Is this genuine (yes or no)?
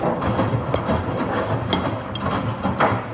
yes